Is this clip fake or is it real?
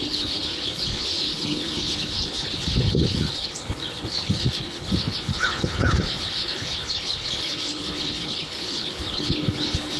fake